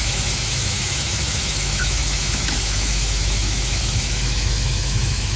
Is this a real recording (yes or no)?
no